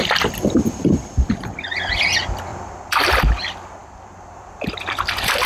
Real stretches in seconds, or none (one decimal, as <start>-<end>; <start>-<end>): 0.0-2.5; 3.1-3.8